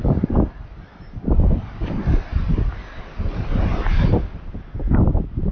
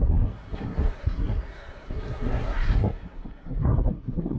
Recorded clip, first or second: first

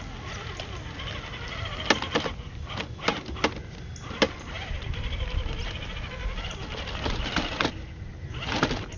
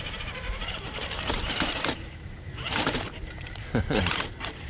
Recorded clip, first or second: first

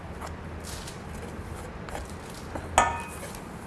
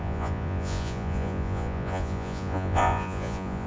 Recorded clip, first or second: first